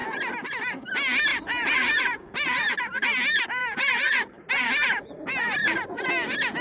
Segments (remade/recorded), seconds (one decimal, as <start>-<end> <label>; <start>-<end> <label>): 0.0-1.3 recorded; 1.3-2.7 remade; 2.7-3.6 recorded; 3.6-4.5 remade; 4.5-5.6 recorded; 5.6-6.1 remade; 6.1-6.6 recorded